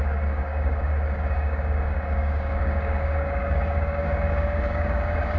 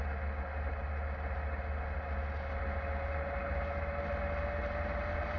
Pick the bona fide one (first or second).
second